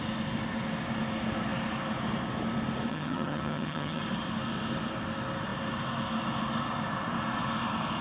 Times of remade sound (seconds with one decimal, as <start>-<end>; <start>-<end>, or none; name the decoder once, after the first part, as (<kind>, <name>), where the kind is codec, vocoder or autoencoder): 2.9-4.0 (vocoder, HiFi-GAN)